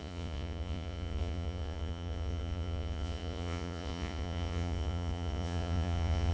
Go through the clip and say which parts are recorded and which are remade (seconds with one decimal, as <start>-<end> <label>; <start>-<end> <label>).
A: 0.0-6.3 remade